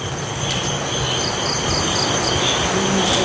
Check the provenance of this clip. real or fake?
real